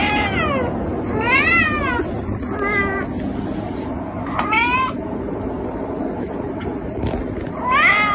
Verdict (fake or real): real